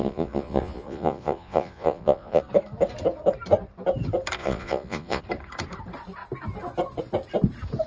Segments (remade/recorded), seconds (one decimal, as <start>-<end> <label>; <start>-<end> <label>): 0.0-2.4 remade; 2.4-4.4 recorded; 4.4-5.2 remade; 5.2-7.9 recorded